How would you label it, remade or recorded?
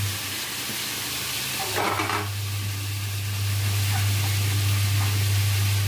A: recorded